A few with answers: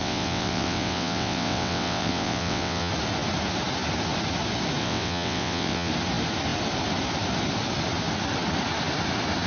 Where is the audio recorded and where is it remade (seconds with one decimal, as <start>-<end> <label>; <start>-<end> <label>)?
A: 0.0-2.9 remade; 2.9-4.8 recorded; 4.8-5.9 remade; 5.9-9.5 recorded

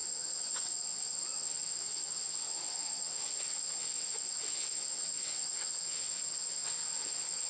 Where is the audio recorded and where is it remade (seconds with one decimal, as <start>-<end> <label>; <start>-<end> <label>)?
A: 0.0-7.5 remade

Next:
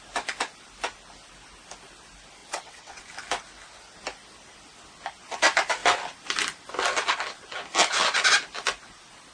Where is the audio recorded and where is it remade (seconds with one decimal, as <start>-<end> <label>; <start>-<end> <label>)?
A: 0.0-2.4 recorded; 2.4-3.0 remade; 3.0-9.3 recorded

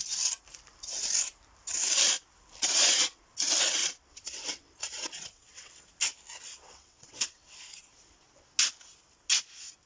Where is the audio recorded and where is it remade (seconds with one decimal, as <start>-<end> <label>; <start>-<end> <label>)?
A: 0.0-2.6 recorded; 2.6-3.2 remade; 3.2-3.8 recorded; 3.8-5.7 remade; 5.7-6.5 recorded; 6.5-7.6 remade; 7.6-9.9 recorded

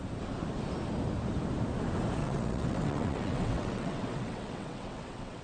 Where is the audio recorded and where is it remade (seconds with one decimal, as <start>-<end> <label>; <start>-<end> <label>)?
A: 0.0-2.2 recorded; 2.2-5.4 remade